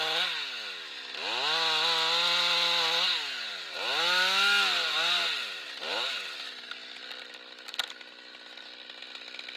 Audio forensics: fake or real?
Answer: real